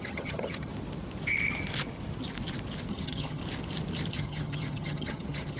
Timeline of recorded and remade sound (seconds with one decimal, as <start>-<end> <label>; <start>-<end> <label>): 0.0-0.7 remade; 0.7-2.9 recorded; 2.9-3.4 remade; 3.4-4.1 recorded; 4.1-5.6 remade